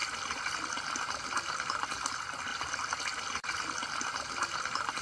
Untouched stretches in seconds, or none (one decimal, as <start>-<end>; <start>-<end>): 0.0-5.0